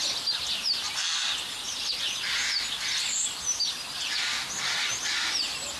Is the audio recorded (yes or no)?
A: yes